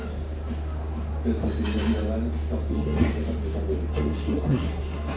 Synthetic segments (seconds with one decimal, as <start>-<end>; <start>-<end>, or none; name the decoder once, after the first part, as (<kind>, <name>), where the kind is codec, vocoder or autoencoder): 2.7-3.1 (codec, SNAC); 3.9-5.2